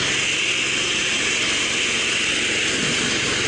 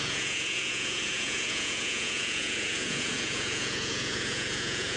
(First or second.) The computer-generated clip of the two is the second